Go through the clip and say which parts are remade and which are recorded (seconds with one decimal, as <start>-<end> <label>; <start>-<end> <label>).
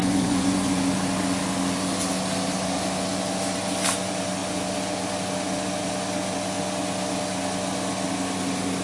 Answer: 0.0-0.8 remade; 0.8-8.8 recorded